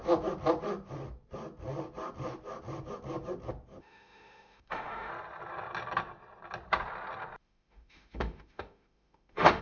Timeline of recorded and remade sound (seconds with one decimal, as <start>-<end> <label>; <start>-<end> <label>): 0.0-3.8 recorded; 3.8-5.1 remade; 5.1-7.4 recorded; 7.4-9.6 remade